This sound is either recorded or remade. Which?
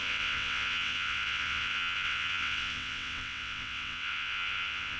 remade